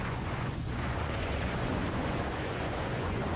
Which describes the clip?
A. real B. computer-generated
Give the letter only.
B